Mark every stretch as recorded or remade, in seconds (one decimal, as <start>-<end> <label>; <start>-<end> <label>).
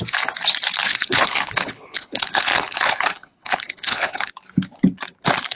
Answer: 0.0-0.9 recorded; 0.9-4.3 remade; 4.3-5.6 recorded